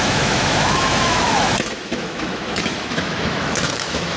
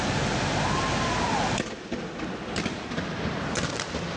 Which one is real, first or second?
second